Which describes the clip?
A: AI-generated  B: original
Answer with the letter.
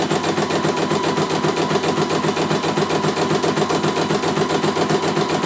B